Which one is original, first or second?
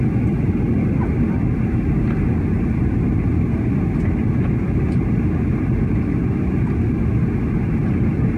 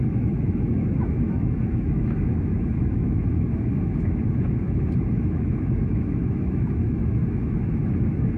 first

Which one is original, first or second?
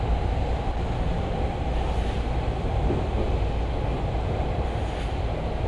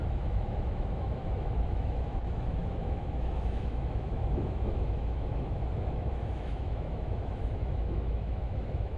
first